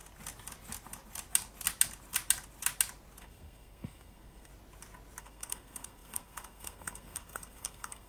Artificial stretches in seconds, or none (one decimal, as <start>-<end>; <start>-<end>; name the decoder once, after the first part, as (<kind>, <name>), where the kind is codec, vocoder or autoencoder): 3.2-4.5 (codec, SNAC); 5.2-8.1